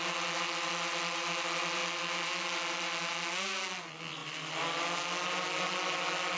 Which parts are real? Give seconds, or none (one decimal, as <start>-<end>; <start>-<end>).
0.0-6.4